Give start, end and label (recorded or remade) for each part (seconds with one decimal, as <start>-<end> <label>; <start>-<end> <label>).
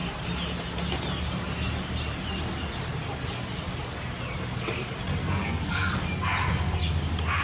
0.0-5.2 recorded; 5.2-6.0 remade; 6.0-7.4 recorded